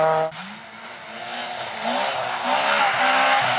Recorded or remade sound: recorded